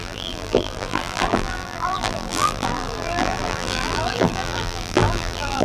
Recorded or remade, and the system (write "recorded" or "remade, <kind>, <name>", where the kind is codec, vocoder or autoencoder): remade, vocoder, BigVGAN v2